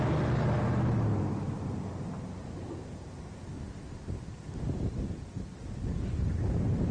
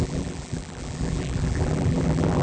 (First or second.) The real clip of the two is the first